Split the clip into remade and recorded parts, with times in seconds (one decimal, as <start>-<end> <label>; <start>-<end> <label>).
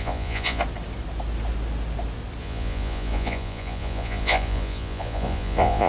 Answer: 0.0-0.6 remade; 0.6-2.4 recorded; 2.4-5.9 remade